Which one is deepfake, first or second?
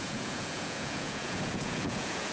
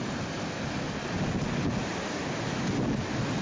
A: first